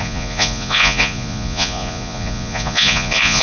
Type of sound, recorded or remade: remade